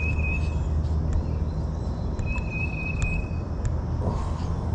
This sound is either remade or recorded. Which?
recorded